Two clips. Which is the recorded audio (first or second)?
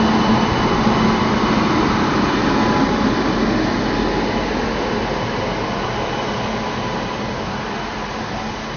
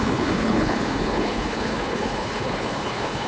first